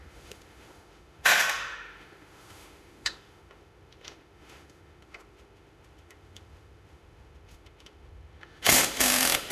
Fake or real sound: fake